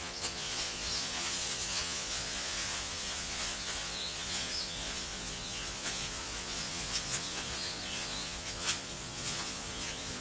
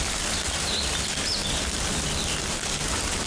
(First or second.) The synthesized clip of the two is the first